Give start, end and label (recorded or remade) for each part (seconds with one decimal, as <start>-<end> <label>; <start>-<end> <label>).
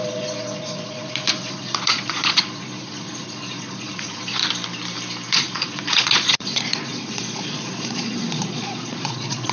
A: 0.0-4.4 remade; 4.4-5.3 recorded; 5.3-9.5 remade